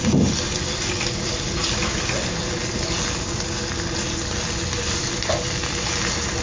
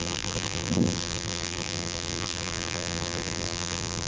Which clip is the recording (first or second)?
first